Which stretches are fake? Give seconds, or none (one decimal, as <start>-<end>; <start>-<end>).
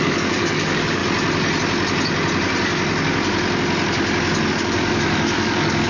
0.0-1.0; 4.5-5.9